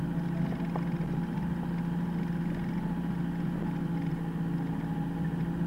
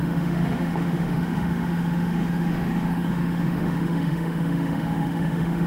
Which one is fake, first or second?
second